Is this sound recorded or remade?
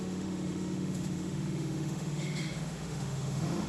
remade